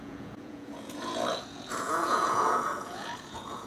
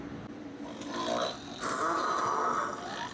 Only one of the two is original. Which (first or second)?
second